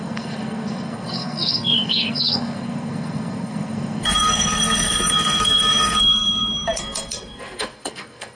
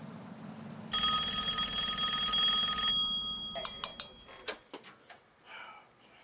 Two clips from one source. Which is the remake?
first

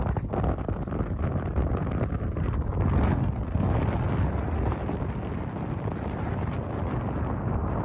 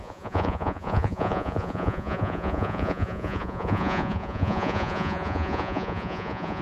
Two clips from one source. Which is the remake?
second